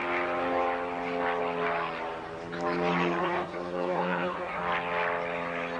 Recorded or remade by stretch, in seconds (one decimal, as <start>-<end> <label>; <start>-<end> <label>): 0.0-3.2 recorded; 3.2-4.6 remade; 4.6-5.8 recorded